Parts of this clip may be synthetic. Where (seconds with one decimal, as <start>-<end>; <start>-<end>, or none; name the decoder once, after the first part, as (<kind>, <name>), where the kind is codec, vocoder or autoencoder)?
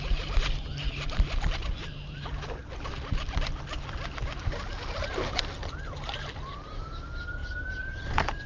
7.4-8.5 (vocoder, BigVGAN v2)